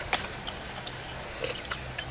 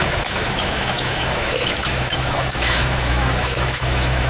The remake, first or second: second